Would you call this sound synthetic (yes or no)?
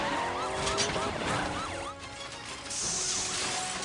no